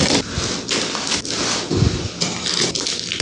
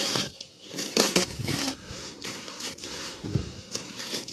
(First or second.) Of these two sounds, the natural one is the first